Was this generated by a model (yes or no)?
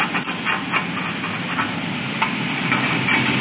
no